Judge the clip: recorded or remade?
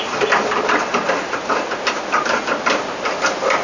recorded